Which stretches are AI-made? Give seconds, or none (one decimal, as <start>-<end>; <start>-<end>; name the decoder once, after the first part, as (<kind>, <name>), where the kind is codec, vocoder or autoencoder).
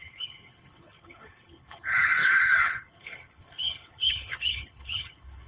0.0-5.5 (codec, HILCodec)